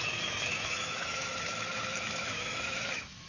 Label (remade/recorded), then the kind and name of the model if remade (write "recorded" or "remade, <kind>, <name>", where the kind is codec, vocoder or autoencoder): remade, autoencoder, DAC-VAE